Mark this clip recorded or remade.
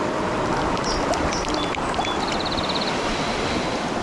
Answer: recorded